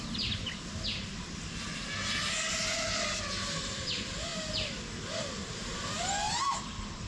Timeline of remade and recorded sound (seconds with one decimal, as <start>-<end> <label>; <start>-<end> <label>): 0.0-7.1 recorded